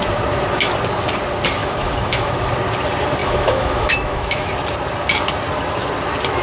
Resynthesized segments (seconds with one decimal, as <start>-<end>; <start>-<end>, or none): 1.6-2.3; 3.2-4.5